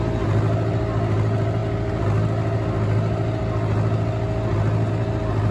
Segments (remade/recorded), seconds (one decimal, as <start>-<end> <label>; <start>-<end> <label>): 0.0-5.5 recorded